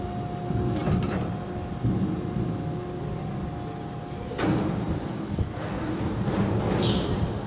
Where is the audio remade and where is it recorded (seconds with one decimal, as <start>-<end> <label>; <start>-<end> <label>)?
0.0-5.1 recorded; 5.1-6.0 remade; 6.0-7.5 recorded